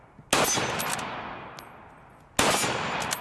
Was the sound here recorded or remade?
recorded